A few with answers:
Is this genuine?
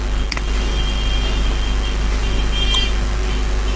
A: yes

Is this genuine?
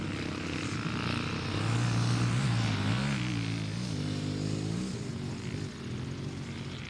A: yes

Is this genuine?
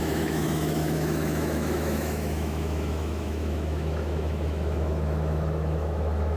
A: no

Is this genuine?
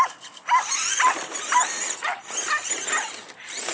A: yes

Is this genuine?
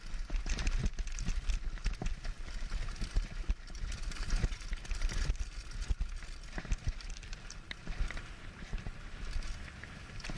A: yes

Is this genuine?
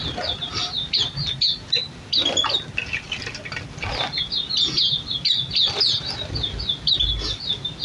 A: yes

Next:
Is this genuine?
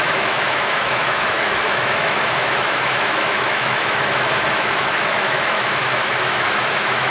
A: no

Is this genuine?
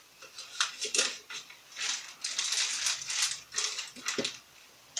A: yes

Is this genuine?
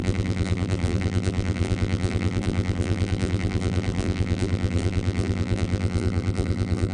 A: no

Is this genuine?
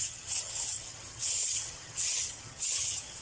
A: no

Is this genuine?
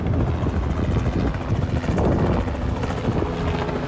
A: yes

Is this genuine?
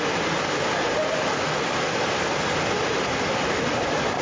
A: yes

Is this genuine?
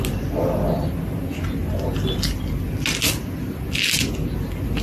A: yes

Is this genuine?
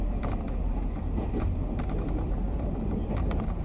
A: no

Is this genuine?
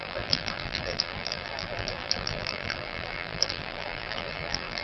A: no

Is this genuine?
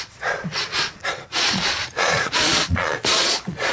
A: no